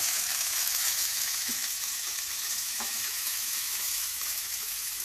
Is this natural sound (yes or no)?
no